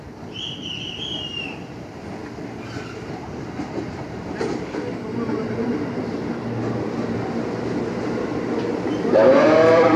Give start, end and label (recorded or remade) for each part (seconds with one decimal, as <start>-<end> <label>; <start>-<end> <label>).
0.0-2.2 remade; 2.2-4.3 recorded; 4.3-10.0 remade